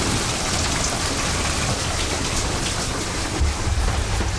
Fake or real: real